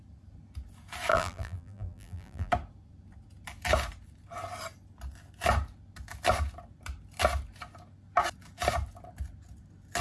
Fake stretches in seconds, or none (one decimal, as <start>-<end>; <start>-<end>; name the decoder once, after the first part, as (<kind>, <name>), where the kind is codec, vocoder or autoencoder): 1.1-2.5 (vocoder, BigVGAN v2)